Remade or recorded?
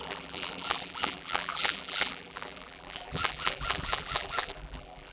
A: remade